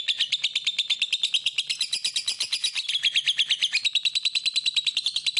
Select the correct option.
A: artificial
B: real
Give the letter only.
B